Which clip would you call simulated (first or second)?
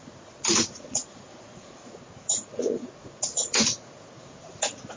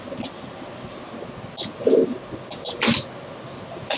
first